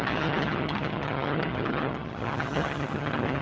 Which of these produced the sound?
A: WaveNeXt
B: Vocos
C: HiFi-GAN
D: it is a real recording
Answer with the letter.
C